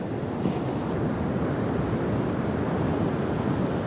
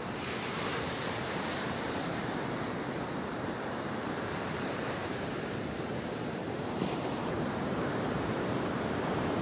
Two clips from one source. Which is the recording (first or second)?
first